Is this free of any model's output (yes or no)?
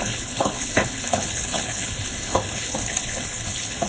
no